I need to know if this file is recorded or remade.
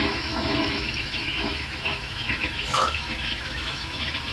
remade